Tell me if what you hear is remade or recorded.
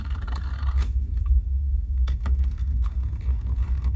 remade